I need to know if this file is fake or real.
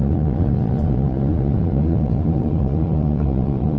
fake